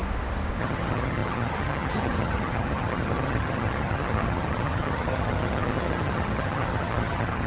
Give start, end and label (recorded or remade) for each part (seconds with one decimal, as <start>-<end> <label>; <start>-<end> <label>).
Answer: 0.0-0.6 recorded; 0.6-7.5 remade